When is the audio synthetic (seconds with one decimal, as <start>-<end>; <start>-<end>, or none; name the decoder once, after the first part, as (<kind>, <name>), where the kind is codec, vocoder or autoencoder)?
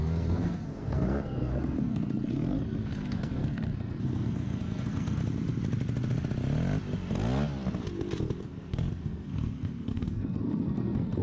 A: 0.0-5.2 (codec, SNAC); 8.4-11.2